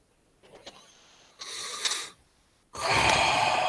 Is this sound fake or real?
real